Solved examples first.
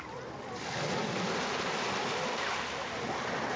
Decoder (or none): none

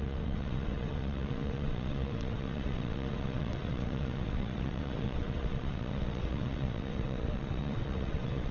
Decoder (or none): vocoder, WaveNeXt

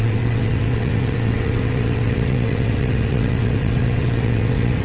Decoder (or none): vocoder, WaveNeXt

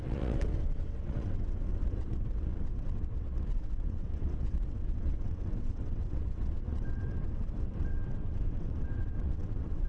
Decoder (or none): vocoder, WaveNeXt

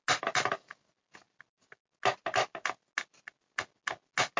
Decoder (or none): none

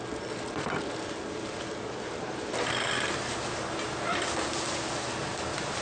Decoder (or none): none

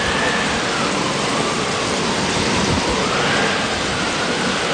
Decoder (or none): none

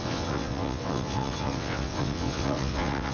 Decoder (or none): vocoder, WaveNeXt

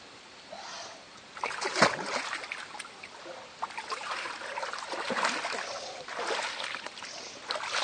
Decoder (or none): none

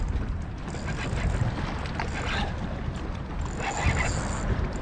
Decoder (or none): none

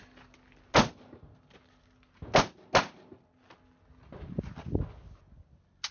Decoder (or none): none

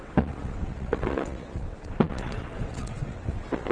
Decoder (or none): vocoder, WaveNeXt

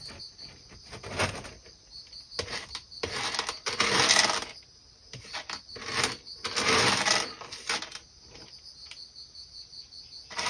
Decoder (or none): none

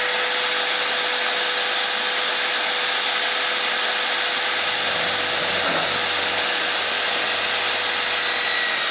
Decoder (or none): none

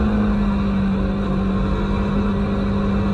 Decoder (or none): none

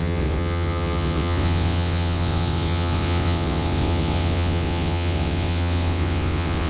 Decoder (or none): vocoder, WaveNeXt